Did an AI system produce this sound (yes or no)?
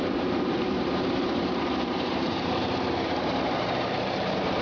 yes